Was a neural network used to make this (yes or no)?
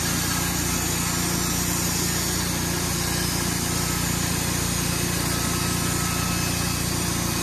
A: no